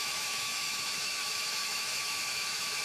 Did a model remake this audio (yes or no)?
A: yes